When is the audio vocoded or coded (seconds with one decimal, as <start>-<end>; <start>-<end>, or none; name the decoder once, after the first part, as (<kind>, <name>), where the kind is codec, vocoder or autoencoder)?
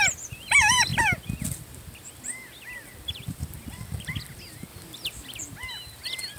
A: 0.0-4.7 (vocoder, BigVGAN v2); 5.4-6.4